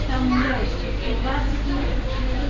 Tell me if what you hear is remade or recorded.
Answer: recorded